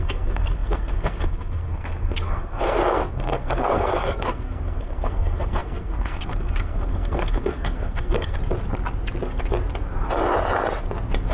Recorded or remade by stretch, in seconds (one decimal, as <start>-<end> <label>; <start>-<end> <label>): 0.0-8.4 remade; 8.4-11.3 recorded